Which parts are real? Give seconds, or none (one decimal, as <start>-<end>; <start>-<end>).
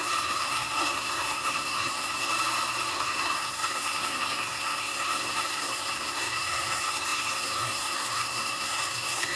2.3-2.9